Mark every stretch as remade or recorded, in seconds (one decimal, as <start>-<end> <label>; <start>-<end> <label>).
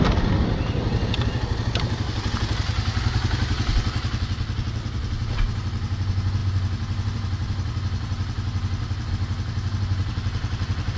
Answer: 0.0-11.0 recorded